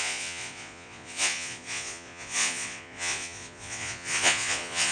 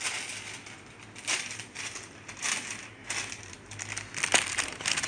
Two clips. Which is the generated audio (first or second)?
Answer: first